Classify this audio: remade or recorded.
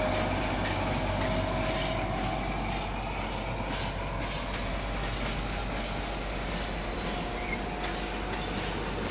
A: recorded